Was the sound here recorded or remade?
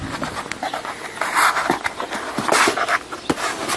recorded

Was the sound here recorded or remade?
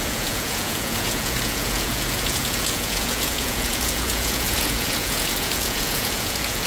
remade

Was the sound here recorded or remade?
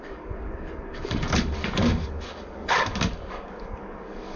remade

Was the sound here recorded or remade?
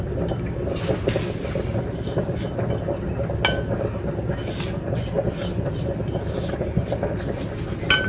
recorded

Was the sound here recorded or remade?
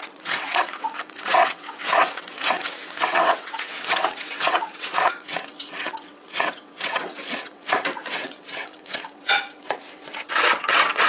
remade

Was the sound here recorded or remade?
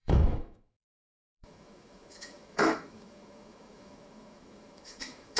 remade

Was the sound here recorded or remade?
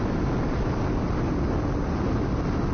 recorded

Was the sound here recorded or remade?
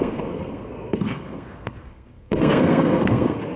remade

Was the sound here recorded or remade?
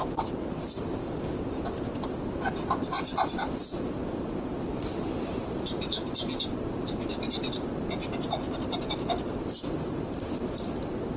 recorded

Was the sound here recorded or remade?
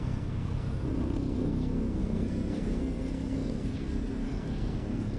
remade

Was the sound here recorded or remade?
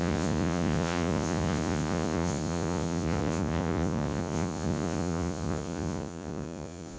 remade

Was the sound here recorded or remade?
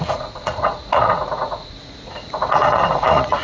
remade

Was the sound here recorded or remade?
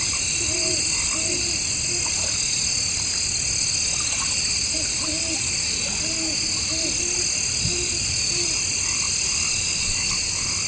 recorded